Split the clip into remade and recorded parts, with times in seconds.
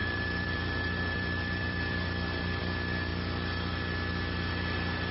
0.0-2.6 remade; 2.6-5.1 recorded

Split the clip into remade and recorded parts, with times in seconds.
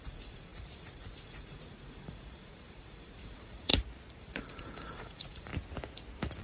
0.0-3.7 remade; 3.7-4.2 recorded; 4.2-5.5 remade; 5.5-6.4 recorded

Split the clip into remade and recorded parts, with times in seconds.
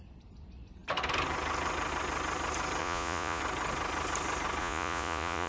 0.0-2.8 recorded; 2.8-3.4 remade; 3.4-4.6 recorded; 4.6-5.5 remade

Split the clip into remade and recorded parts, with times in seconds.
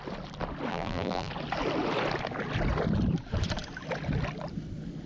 0.0-0.7 recorded; 0.7-1.3 remade; 1.3-5.1 recorded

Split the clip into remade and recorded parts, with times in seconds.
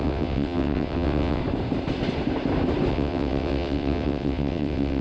0.0-1.4 remade; 1.4-2.9 recorded; 2.9-5.0 remade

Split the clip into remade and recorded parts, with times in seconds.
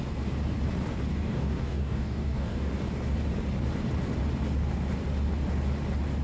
0.0-1.1 recorded; 1.1-2.7 remade; 2.7-6.2 recorded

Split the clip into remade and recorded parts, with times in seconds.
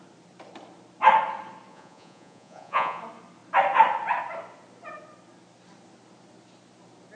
0.0-1.7 recorded; 1.7-3.0 remade; 3.0-7.2 recorded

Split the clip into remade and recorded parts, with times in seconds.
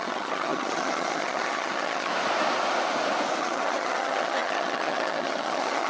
0.0-2.1 remade; 2.1-3.4 recorded; 3.4-5.9 remade